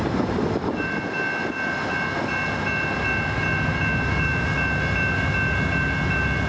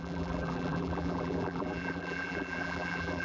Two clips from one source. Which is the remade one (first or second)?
second